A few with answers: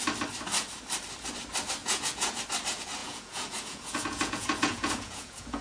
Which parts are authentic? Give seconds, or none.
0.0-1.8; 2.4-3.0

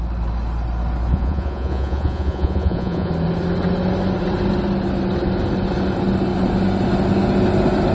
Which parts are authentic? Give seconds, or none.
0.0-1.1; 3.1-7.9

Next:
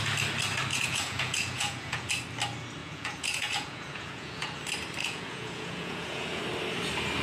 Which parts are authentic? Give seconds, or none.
0.0-0.7; 2.1-2.8; 4.6-5.0; 6.4-7.2